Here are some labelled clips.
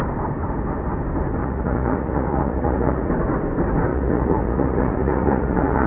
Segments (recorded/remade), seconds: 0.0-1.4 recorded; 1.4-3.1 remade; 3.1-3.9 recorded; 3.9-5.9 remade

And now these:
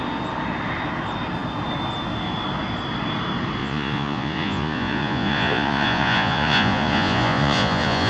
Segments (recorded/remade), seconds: 0.0-3.6 recorded; 3.6-8.1 remade

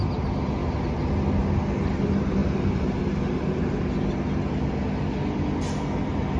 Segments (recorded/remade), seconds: 0.0-6.4 recorded

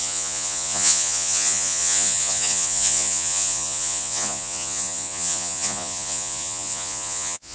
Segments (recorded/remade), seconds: 0.0-7.5 remade

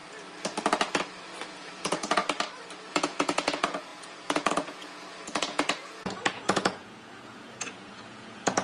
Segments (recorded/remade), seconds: 0.0-1.5 recorded; 1.5-2.2 remade; 2.2-2.9 recorded; 2.9-8.6 remade

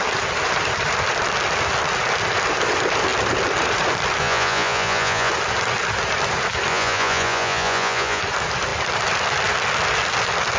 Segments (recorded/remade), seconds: 0.0-4.2 recorded; 4.2-5.3 remade; 5.3-6.7 recorded; 6.7-8.2 remade; 8.2-10.6 recorded

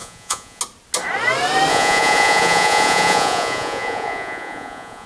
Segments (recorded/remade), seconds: 0.0-0.6 remade; 0.6-1.7 recorded; 1.7-5.1 remade